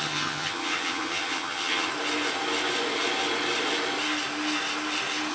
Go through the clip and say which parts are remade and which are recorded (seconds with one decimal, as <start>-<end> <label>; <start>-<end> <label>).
0.0-1.9 remade; 1.9-5.3 recorded

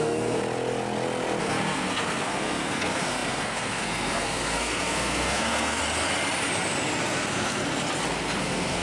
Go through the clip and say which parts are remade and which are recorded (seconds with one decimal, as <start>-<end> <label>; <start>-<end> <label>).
0.0-0.4 remade; 0.4-1.4 recorded; 1.4-5.8 remade; 5.8-7.0 recorded; 7.0-7.6 remade; 7.6-8.4 recorded; 8.4-8.8 remade

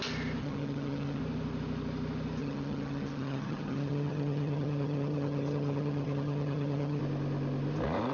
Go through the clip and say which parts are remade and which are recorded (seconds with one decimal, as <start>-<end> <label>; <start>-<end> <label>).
0.0-0.4 recorded; 0.4-1.2 remade; 1.2-2.4 recorded; 2.4-7.0 remade; 7.0-8.1 recorded

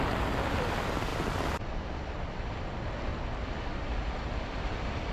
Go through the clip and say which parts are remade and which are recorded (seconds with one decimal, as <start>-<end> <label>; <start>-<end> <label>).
0.0-3.1 recorded; 3.1-5.1 remade